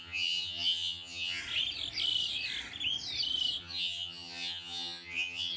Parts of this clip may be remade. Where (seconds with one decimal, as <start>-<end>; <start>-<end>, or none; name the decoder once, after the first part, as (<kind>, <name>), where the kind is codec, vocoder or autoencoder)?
0.0-1.4 (vocoder, HiFi-GAN); 3.6-5.6